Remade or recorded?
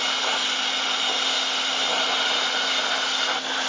recorded